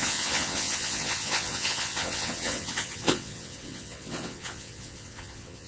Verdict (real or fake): fake